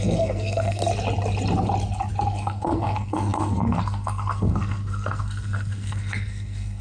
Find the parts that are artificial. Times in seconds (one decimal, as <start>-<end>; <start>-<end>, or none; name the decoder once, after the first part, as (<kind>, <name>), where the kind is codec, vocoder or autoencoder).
0.0-0.8 (codec, SNAC); 2.3-6.8